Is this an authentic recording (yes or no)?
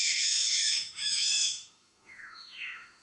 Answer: no